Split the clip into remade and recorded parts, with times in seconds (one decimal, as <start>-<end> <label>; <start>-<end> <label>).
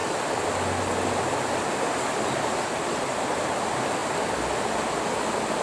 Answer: 0.0-5.6 recorded